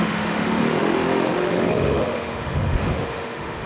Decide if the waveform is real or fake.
fake